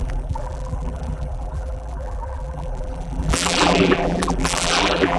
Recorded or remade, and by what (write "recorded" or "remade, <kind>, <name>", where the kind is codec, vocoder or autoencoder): remade, vocoder, BigVGAN v2